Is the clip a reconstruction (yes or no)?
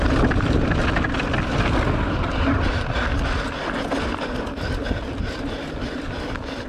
no